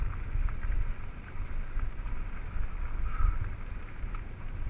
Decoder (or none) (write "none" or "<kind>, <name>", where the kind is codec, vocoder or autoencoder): none